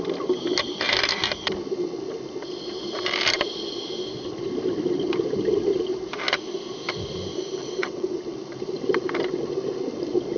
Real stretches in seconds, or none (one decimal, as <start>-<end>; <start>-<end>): 0.0-7.6; 8.2-10.4